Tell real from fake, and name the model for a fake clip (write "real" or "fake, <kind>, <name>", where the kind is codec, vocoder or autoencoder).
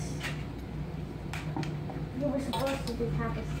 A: real